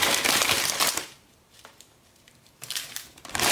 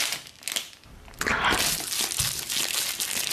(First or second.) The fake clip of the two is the first